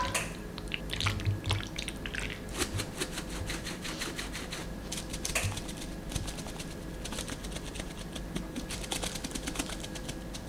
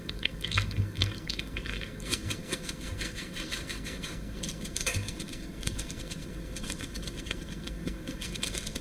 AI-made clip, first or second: second